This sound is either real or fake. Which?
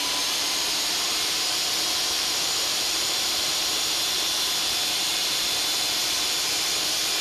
fake